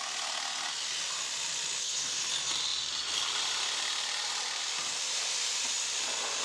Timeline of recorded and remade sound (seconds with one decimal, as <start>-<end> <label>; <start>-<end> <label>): 0.0-1.8 recorded; 1.8-2.3 remade; 2.3-6.4 recorded

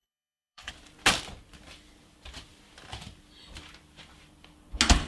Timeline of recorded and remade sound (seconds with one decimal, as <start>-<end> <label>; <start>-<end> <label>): 0.0-0.7 remade; 0.7-5.1 recorded